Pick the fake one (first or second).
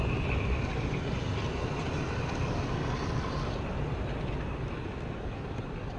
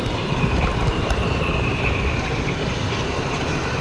second